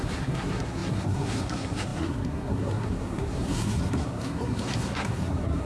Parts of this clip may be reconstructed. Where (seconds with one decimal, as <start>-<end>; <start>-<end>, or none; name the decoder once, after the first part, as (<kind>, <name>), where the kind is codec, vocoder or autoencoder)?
0.0-5.7 (codec, SNAC)